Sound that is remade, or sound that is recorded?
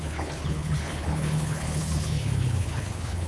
remade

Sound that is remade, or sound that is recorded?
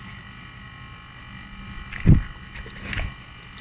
recorded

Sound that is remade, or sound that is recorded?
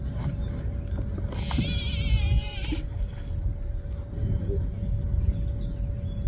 recorded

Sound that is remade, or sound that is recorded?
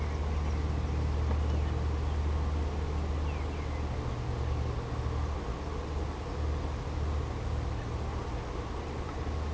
recorded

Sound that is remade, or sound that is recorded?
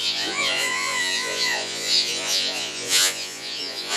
remade